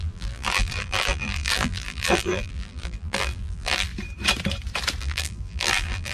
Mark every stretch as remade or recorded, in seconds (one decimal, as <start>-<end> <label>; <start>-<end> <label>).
0.0-3.9 remade; 3.9-5.0 recorded; 5.0-6.1 remade